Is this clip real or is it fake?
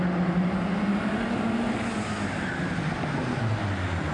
real